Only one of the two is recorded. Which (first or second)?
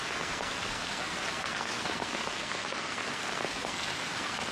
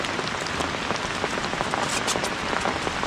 second